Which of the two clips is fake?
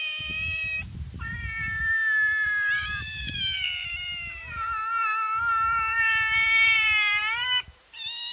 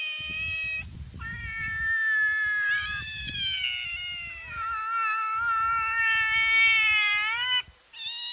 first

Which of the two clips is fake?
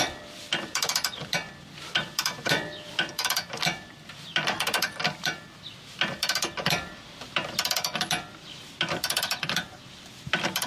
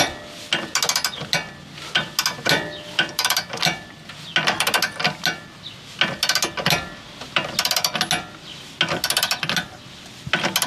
first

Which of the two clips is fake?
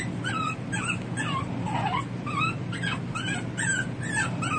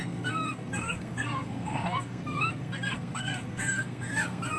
second